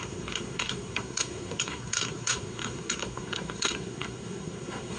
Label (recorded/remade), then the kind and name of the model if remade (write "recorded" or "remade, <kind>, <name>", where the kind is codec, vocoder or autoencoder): remade, codec, SNAC